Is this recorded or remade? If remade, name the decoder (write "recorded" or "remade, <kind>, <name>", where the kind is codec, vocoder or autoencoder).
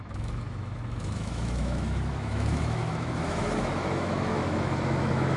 remade, autoencoder, DAC-VAE